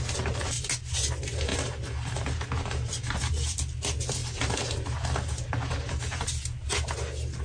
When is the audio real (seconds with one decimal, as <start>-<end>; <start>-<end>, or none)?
0.0-7.4